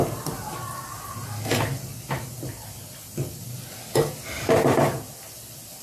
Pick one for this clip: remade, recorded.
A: recorded